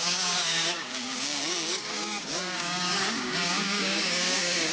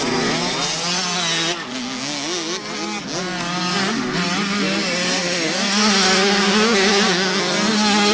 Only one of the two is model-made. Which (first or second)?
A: first